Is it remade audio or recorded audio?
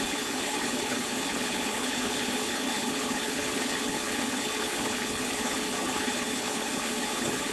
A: remade